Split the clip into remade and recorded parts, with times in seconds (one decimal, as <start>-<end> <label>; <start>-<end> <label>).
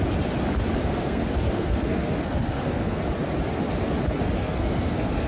0.0-0.8 recorded; 0.8-3.0 remade; 3.0-4.4 recorded; 4.4-5.3 remade